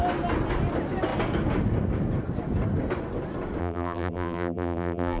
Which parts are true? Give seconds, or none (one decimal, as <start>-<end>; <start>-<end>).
0.0-3.6